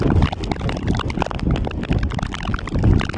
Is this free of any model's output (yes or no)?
yes